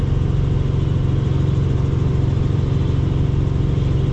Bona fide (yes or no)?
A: yes